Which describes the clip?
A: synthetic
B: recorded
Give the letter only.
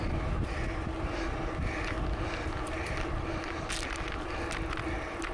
B